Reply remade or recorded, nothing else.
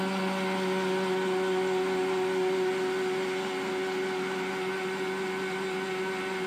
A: recorded